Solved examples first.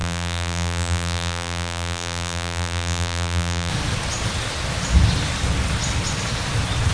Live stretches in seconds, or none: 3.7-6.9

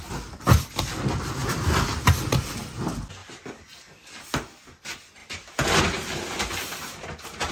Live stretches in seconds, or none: 0.0-1.4; 1.9-3.2; 4.2-7.5

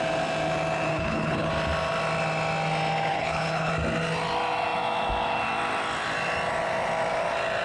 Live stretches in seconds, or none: 0.0-0.9; 1.5-3.1; 3.7-7.6

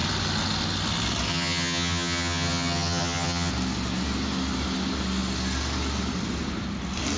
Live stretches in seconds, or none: 0.0-1.3; 3.5-7.2

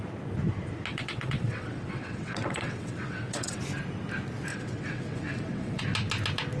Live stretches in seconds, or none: 0.0-0.9; 3.6-4.5; 5.8-6.6

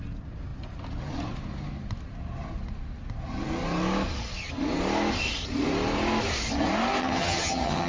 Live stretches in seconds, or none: 0.0-7.0

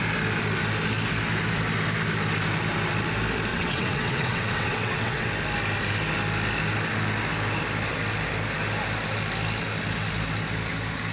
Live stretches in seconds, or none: 0.0-3.5; 5.3-11.1